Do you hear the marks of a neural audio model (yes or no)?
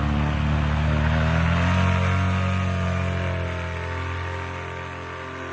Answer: no